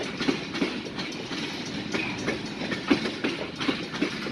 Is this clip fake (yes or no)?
no